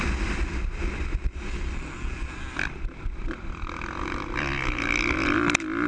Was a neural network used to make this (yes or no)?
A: no